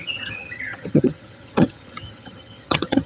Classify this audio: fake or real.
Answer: fake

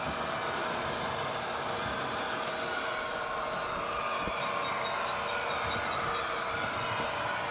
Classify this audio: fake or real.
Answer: real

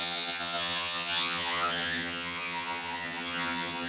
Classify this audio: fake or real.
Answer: fake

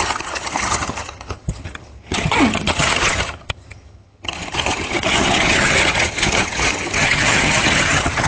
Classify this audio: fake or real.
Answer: fake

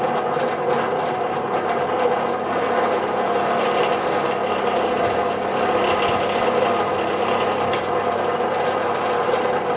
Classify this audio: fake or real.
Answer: real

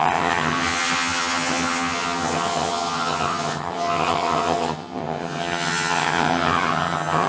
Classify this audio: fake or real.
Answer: fake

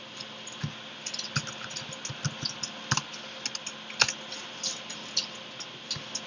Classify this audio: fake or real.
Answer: real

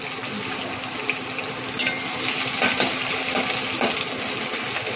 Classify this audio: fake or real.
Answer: real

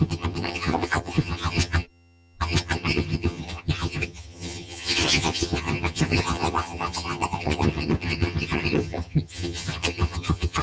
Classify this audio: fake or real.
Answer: fake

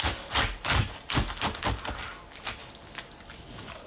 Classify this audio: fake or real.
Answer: real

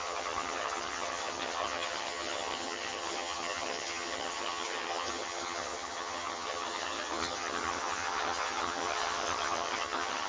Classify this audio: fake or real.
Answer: fake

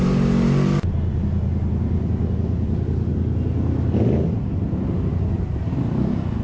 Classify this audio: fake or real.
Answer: real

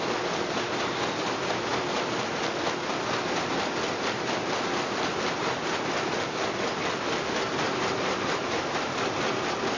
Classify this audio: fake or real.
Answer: real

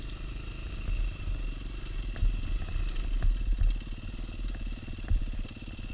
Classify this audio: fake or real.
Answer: real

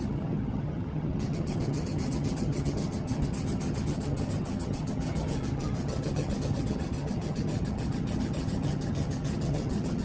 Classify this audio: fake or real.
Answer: fake